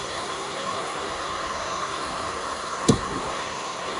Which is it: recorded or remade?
remade